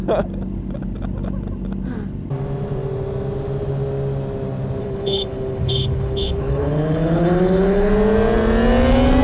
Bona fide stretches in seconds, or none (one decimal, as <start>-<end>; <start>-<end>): 0.0-4.8; 7.9-9.2